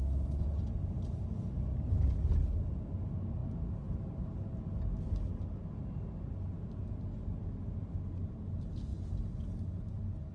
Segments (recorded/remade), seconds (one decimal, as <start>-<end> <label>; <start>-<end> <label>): 0.0-10.3 recorded